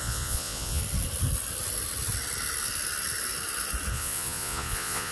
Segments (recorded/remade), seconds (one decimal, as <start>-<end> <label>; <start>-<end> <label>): 0.0-0.8 remade; 0.8-3.9 recorded; 3.9-5.1 remade